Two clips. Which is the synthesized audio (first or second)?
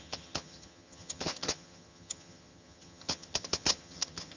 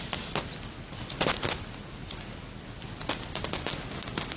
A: first